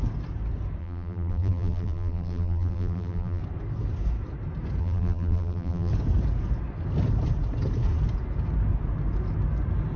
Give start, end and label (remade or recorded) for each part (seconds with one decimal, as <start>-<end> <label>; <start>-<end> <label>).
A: 0.0-0.8 recorded; 0.8-3.4 remade; 3.4-4.8 recorded; 4.8-5.9 remade; 5.9-10.0 recorded